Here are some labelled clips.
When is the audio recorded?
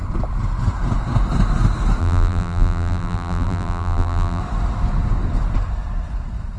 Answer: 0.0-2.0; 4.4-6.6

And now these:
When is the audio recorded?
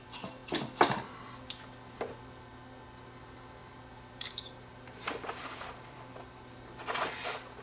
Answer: 0.0-3.6; 6.8-7.6